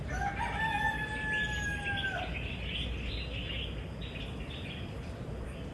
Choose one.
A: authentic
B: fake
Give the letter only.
A